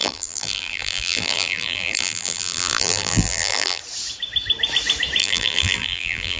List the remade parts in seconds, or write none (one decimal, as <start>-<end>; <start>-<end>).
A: 0.0-3.8; 5.2-6.4